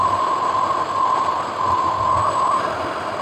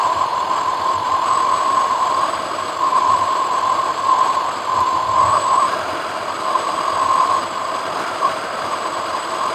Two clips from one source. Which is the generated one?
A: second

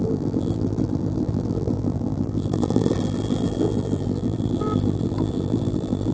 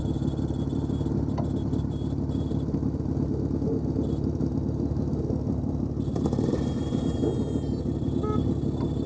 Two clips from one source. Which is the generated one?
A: first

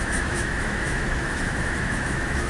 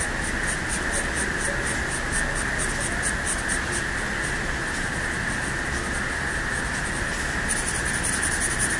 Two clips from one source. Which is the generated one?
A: first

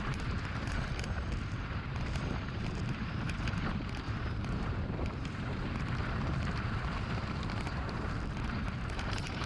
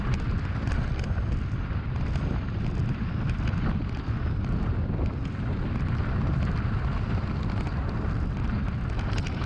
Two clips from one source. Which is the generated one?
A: first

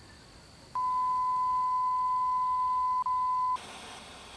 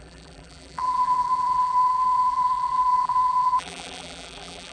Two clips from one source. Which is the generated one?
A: second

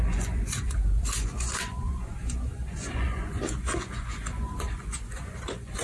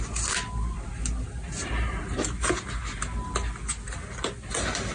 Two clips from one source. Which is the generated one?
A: first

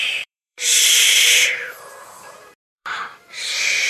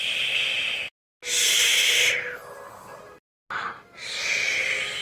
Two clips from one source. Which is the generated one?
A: first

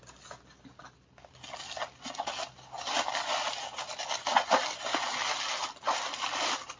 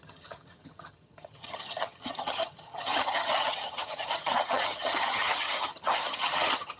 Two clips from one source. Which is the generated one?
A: second